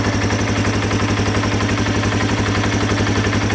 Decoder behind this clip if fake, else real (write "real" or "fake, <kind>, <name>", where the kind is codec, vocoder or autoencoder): real